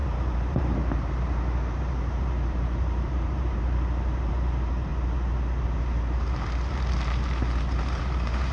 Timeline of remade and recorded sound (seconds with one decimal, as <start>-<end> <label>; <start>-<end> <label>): 0.0-4.9 remade; 4.9-5.8 recorded; 5.8-8.5 remade